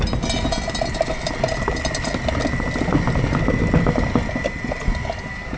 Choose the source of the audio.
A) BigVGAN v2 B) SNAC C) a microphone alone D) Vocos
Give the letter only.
C